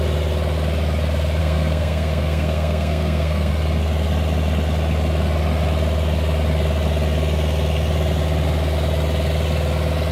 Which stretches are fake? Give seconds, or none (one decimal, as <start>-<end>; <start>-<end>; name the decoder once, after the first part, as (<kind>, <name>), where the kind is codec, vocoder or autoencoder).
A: 1.4-3.5 (codec, SNAC)